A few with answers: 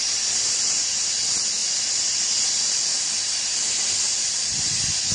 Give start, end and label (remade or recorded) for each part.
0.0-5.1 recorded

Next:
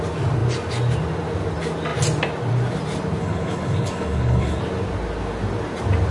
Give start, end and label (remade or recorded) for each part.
0.0-3.2 recorded; 3.2-4.6 remade; 4.6-6.1 recorded

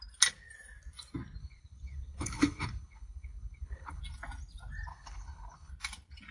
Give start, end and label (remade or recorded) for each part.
0.0-1.4 recorded; 1.4-4.0 remade; 4.0-4.9 recorded; 4.9-5.7 remade; 5.7-6.3 recorded

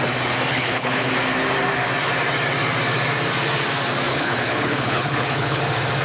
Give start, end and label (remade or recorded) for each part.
0.0-0.5 recorded; 0.5-1.1 remade; 1.1-4.1 recorded; 4.1-5.6 remade; 5.6-6.0 recorded